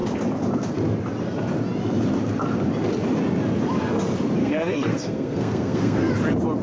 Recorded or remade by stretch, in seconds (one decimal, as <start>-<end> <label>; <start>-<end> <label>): 0.0-4.4 recorded; 4.4-6.1 remade; 6.1-6.6 recorded